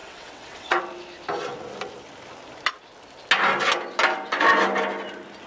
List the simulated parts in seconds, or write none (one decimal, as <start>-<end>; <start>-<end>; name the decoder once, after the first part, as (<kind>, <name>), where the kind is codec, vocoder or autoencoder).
0.0-0.8 (vocoder, WaveNeXt)